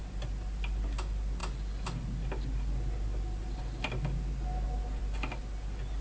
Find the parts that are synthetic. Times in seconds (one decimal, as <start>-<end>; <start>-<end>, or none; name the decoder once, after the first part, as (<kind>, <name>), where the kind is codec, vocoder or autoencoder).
none